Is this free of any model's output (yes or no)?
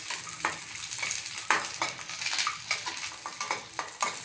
yes